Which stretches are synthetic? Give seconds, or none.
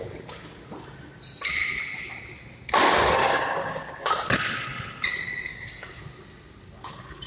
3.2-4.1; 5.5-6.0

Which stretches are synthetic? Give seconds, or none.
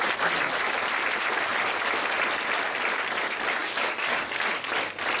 3.6-4.7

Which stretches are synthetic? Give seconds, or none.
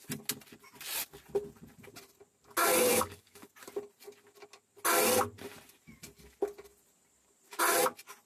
2.9-3.5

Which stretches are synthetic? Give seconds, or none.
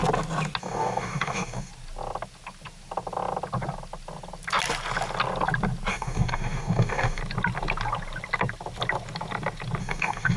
0.6-1.7; 5.9-7.2; 9.8-10.4